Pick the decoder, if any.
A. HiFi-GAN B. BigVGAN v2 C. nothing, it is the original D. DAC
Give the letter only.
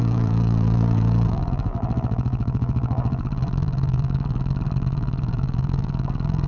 B